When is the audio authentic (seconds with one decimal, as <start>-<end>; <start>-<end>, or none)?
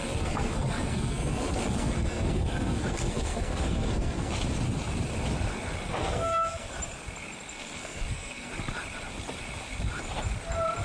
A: 4.3-6.0; 6.7-7.5; 8.5-10.8